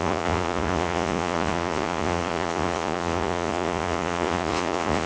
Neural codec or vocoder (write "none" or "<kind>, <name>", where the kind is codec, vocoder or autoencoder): vocoder, Vocos